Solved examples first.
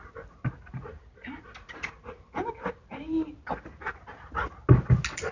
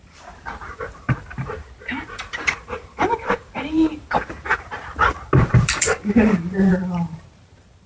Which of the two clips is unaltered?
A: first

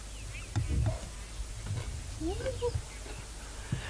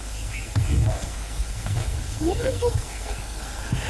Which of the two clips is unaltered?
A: first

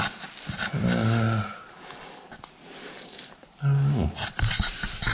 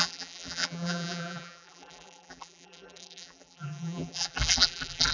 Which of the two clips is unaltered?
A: first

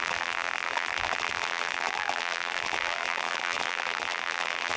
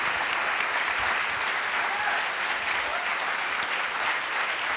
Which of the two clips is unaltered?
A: second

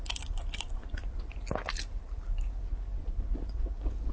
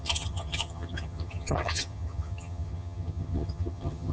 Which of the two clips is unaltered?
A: first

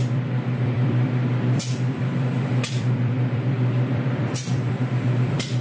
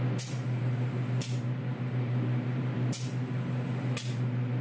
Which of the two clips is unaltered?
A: second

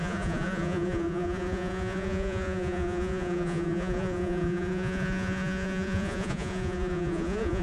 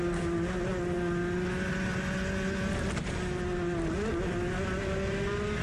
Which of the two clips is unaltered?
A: second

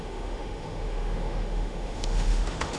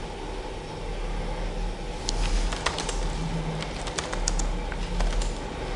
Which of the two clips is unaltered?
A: second